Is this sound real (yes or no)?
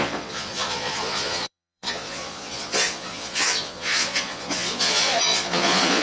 no